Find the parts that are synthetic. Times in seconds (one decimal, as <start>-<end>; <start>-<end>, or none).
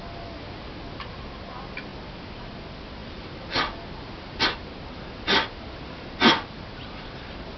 none